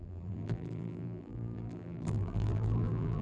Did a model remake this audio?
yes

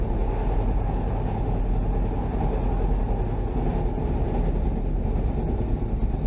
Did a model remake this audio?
no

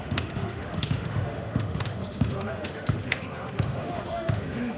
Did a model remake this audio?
yes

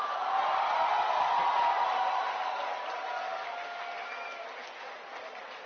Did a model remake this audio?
no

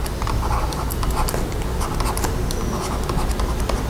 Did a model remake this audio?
no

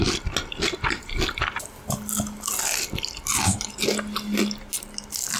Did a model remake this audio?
no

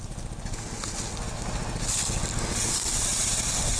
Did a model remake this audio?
no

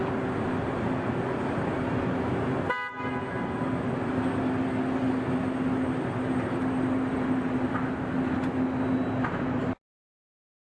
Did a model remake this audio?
no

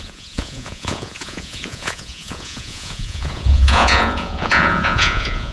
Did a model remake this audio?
yes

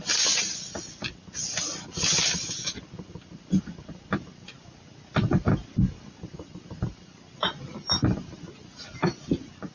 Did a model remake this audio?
yes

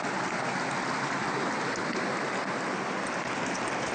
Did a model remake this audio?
no